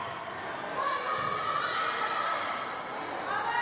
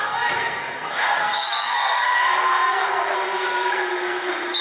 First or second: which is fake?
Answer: second